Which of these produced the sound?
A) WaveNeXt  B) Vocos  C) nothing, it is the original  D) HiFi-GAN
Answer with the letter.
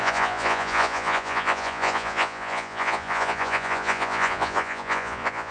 B